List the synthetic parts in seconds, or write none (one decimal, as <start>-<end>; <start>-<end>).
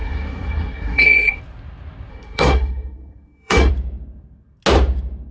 0.0-1.4; 2.1-3.7